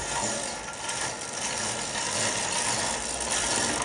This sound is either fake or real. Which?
real